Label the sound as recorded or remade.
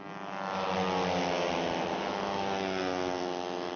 recorded